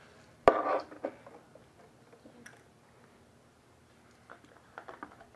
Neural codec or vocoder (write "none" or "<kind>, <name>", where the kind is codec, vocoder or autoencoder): none